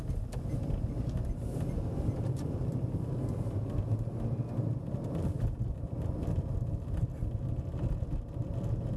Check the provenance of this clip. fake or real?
real